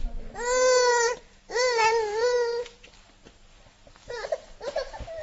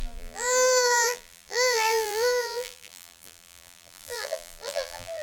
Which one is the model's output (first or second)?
second